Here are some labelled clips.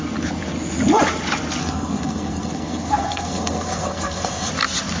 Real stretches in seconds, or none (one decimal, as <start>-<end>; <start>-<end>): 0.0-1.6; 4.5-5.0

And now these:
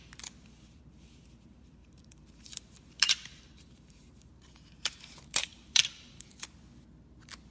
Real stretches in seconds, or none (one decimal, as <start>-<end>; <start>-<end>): 0.0-1.8; 6.3-7.5

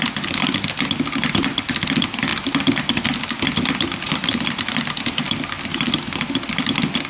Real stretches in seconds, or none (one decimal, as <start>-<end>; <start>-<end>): 0.0-7.1

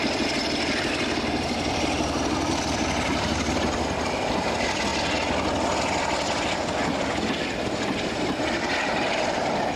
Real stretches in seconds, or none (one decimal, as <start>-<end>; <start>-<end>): 4.9-6.5

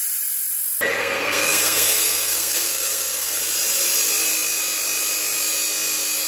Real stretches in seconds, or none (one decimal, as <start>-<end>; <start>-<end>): 0.0-1.0; 3.4-6.3